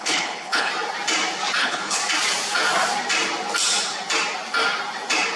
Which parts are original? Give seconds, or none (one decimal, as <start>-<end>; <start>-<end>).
0.7-1.6; 2.0-5.4